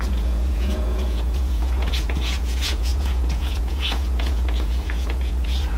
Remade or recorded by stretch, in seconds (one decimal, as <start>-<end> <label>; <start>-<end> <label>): 0.0-5.8 remade